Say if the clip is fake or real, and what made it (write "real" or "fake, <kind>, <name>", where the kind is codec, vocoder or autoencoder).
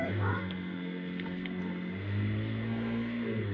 fake, codec, SNAC